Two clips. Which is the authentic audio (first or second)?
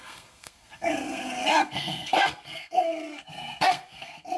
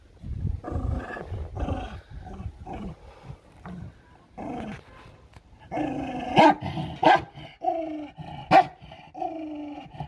second